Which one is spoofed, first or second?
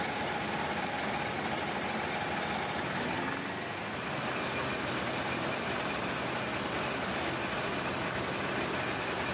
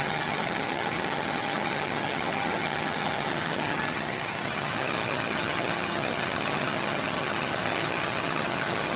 second